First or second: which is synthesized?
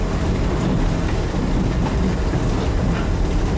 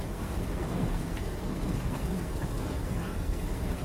second